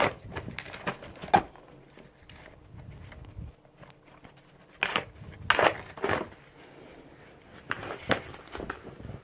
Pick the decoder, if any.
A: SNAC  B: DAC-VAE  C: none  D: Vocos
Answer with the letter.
C